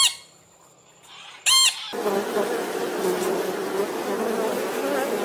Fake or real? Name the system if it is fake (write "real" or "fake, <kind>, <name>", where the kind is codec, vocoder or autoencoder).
real